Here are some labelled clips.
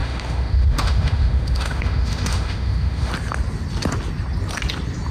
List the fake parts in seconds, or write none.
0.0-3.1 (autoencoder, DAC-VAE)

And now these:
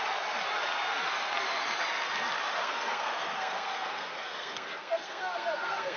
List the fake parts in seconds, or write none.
2.6-6.0 (codec, SNAC)

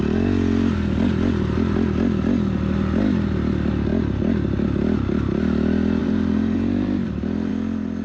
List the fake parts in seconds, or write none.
6.0-7.5 (vocoder, BigVGAN v2)

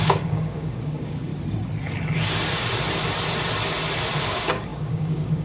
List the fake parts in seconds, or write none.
0.0-1.3 (codec, DAC); 4.3-5.4

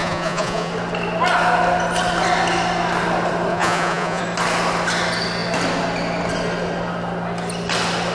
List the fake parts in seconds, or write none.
0.0-0.7 (vocoder, Vocos); 3.5-4.2

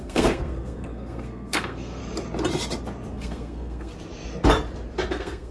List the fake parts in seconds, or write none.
0.0-2.0 (codec, SNAC); 3.1-3.9; 5.1-5.5

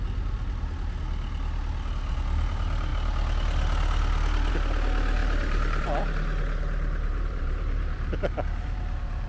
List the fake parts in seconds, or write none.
5.2-9.3 (vocoder, BigVGAN v2)

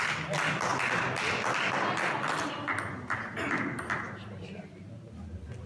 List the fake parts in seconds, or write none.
none